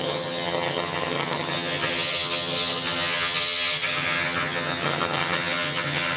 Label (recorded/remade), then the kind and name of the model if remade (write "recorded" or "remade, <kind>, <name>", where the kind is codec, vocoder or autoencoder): remade, vocoder, HiFi-GAN